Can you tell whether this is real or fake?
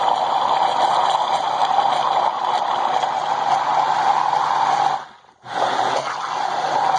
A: real